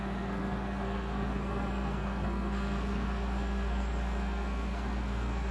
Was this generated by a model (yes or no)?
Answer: yes